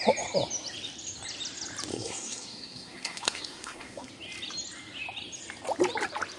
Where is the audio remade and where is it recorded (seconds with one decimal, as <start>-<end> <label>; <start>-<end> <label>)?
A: 0.0-1.9 recorded; 1.9-4.1 remade; 4.1-6.4 recorded